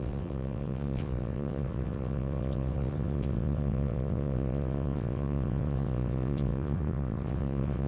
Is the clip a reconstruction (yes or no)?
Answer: yes